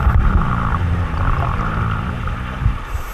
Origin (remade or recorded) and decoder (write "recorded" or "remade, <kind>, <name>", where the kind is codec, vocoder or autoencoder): remade, vocoder, BigVGAN v2